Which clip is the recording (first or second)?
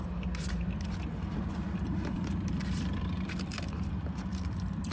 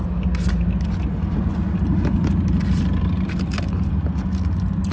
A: second